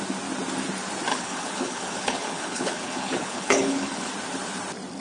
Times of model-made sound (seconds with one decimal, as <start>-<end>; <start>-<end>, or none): 1.1-4.1